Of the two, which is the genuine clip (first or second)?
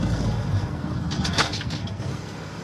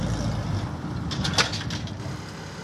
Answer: second